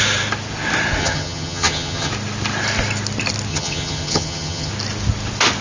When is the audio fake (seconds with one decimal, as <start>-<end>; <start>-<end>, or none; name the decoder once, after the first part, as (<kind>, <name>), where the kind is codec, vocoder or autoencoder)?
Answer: 1.0-2.1 (vocoder, HiFi-GAN); 3.5-4.7